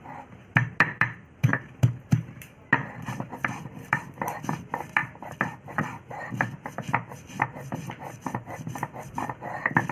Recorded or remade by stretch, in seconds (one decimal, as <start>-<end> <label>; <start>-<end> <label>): 0.0-1.5 recorded; 1.5-4.6 remade; 4.6-9.9 recorded